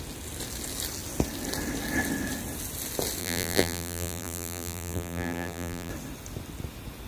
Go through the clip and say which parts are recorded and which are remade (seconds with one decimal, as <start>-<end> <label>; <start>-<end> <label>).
0.0-3.2 recorded; 3.2-5.9 remade; 5.9-7.1 recorded